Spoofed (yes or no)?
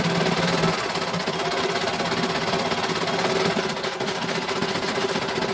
no